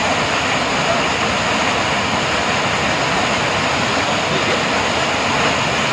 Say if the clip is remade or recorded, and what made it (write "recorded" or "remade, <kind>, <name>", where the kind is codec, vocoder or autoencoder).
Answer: recorded